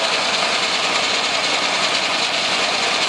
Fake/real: fake